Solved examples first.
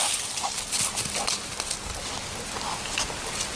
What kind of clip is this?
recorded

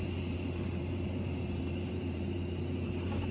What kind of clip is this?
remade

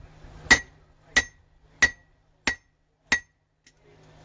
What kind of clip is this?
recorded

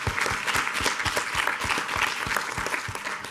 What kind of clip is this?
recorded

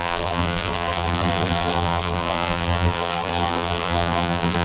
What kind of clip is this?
remade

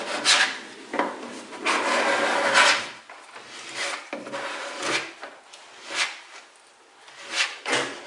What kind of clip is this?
recorded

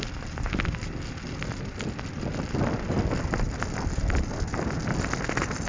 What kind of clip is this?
recorded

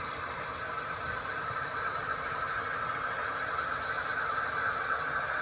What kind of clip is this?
recorded